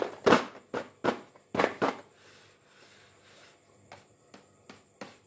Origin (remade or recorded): recorded